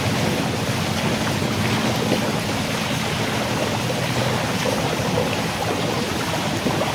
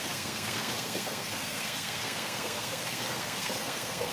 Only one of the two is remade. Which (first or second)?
second